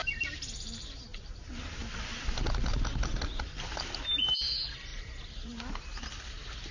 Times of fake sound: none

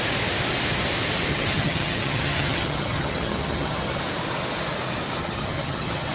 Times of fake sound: 1.3-4.0 (vocoder, HiFi-GAN); 5.2-6.1

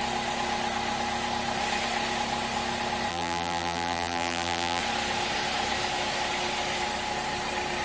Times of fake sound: 3.1-4.8 (vocoder, BigVGAN v2)

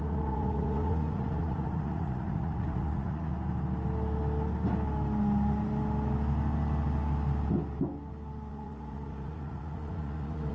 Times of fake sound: 0.0-3.3 (vocoder, Vocos); 8.5-10.5

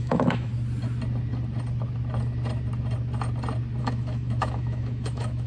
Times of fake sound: 0.0-0.5 (autoencoder, DAC-VAE); 3.8-5.5

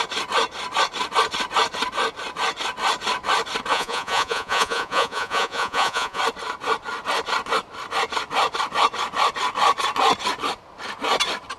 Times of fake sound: 3.7-6.2 (vocoder, Vocos)

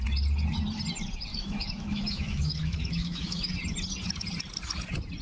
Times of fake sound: 1.3-3.5 (autoencoder, DAC-VAE)

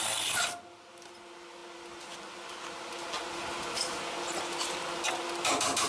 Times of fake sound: none